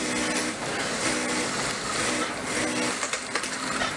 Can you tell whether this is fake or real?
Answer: real